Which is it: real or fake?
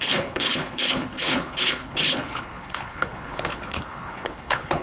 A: fake